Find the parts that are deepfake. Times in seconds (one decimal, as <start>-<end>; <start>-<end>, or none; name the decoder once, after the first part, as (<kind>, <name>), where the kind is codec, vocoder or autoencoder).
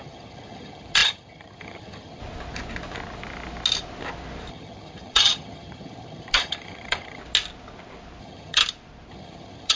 0.0-2.2 (vocoder, HiFi-GAN); 4.5-7.2; 8.2-8.6; 9.1-9.8